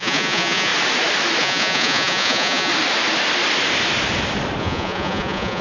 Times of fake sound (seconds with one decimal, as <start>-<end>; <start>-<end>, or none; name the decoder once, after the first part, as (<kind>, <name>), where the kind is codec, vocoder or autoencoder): 0.0-0.7 (vocoder, Vocos); 1.4-2.7; 4.6-5.6